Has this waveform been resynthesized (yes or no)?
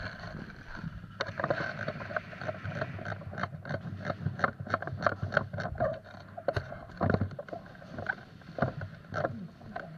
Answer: no